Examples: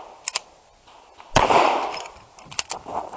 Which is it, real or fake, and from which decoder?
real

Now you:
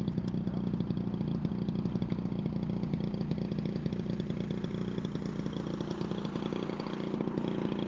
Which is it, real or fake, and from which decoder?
real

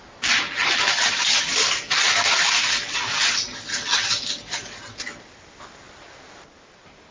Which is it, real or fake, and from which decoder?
real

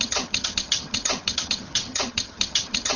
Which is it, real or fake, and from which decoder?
fake, vocoder, HiFi-GAN